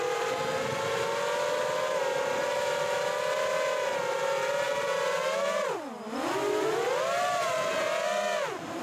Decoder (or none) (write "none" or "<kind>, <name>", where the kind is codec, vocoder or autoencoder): none